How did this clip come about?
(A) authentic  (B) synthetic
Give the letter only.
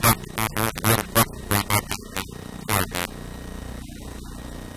A